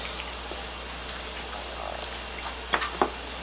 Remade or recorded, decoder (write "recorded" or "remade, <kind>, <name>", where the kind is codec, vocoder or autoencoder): recorded